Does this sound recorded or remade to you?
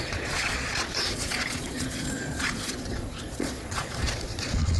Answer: remade